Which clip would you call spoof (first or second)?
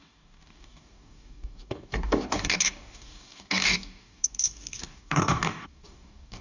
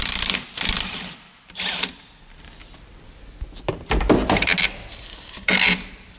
first